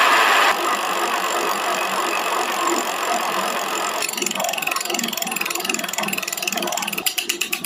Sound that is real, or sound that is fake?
fake